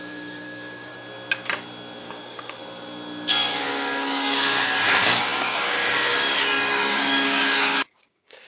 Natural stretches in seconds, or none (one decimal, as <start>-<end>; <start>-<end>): 0.9-2.0; 2.6-3.3